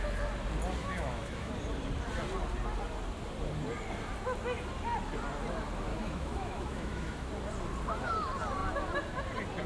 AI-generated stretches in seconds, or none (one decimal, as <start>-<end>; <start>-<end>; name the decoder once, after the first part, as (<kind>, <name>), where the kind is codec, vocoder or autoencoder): 0.8-1.5 (autoencoder, DAC-VAE); 5.9-7.3

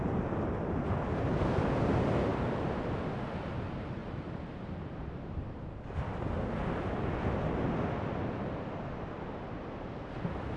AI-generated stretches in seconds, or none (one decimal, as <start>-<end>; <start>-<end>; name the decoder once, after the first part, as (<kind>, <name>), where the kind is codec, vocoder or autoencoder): none

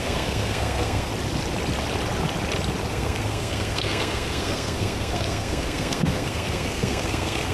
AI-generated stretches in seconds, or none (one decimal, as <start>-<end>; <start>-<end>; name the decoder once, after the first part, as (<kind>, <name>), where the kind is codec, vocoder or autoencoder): 0.0-1.1 (codec, SNAC); 2.9-7.5

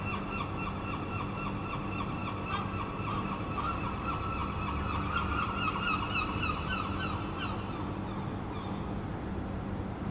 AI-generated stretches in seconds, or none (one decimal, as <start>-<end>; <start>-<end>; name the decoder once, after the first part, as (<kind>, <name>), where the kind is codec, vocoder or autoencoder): none